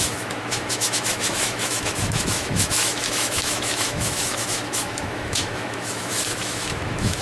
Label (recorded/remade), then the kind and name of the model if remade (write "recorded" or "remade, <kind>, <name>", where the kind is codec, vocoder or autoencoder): remade, autoencoder, DAC-VAE